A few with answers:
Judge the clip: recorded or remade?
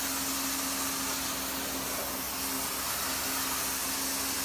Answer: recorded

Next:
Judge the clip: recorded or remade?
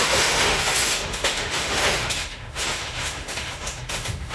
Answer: remade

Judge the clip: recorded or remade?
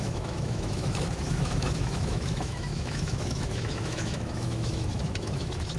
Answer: remade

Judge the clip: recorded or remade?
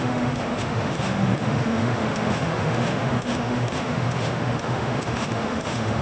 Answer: remade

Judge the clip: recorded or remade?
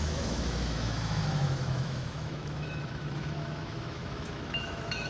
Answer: remade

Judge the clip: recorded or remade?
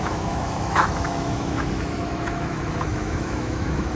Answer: remade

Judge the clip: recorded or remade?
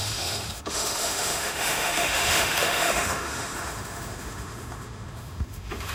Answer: remade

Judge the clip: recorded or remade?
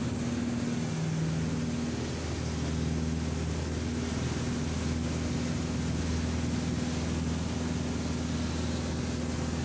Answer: recorded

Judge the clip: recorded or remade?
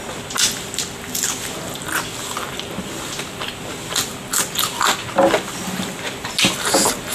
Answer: recorded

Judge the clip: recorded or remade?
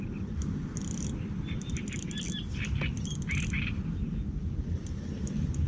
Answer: recorded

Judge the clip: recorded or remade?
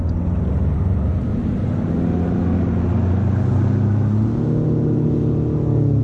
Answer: recorded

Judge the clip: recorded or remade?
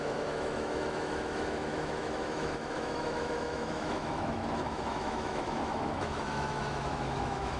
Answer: remade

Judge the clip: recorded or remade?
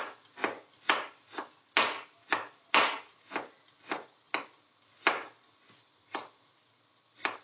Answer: recorded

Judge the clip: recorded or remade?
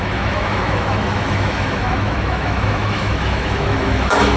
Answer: remade